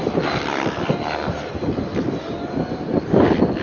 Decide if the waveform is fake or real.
fake